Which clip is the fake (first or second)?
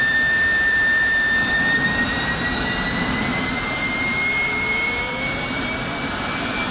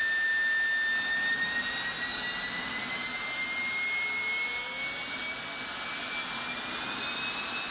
first